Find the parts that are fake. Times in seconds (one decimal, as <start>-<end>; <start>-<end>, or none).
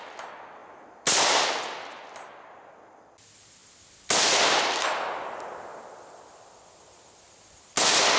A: none